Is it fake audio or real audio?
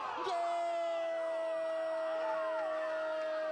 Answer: real